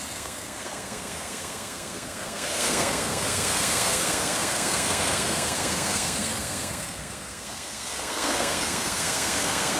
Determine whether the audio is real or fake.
fake